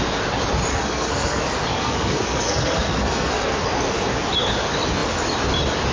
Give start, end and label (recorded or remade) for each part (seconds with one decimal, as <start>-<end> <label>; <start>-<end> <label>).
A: 0.0-0.7 recorded; 0.7-1.4 remade; 1.4-1.8 recorded; 1.8-3.6 remade; 3.6-5.9 recorded